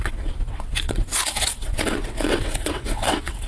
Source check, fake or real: fake